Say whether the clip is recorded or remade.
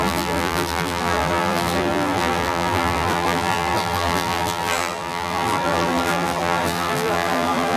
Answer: remade